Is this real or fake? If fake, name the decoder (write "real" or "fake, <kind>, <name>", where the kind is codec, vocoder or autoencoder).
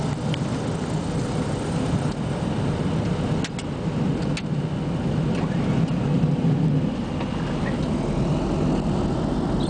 real